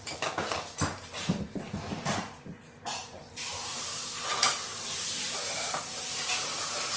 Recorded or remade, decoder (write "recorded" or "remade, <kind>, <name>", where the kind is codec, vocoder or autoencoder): remade, vocoder, BigVGAN v2